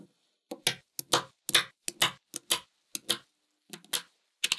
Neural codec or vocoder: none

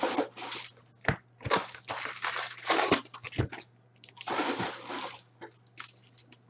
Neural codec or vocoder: none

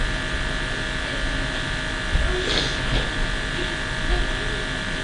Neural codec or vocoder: none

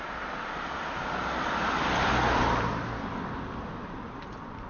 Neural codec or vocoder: vocoder, BigVGAN v2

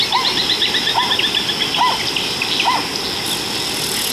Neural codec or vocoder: none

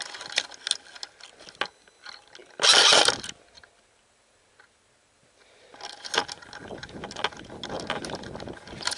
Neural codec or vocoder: none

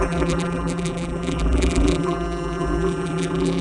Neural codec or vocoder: vocoder, BigVGAN v2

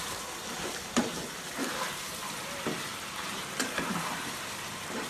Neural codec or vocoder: vocoder, BigVGAN v2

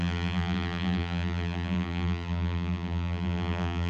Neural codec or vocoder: vocoder, BigVGAN v2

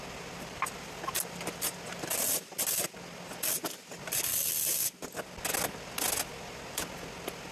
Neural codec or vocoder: none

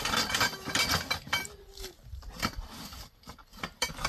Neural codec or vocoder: vocoder, BigVGAN v2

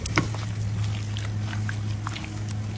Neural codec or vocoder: none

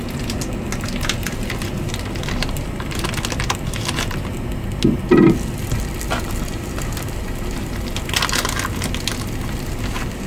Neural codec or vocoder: none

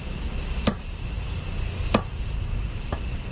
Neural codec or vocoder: none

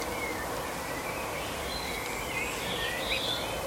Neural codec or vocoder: none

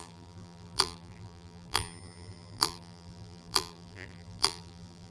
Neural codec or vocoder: vocoder, BigVGAN v2